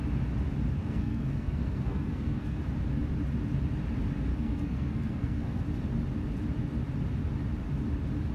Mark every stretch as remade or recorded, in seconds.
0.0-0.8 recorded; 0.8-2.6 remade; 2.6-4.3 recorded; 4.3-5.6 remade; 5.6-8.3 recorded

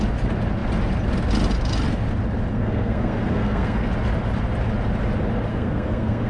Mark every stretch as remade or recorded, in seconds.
0.0-2.5 recorded; 2.5-3.9 remade; 3.9-5.5 recorded; 5.5-6.3 remade

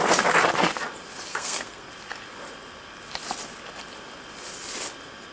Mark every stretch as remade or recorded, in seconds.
0.0-1.3 recorded; 1.3-1.9 remade; 1.9-5.3 recorded

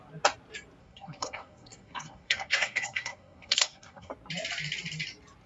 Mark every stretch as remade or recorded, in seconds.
0.0-0.8 recorded; 0.8-4.1 remade; 4.1-5.5 recorded

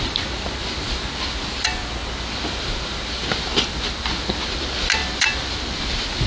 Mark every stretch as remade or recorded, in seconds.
0.0-6.3 recorded

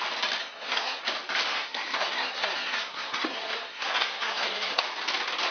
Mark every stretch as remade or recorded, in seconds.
0.0-0.4 recorded; 0.4-1.0 remade; 1.0-1.5 recorded; 1.5-4.8 remade; 4.8-5.5 recorded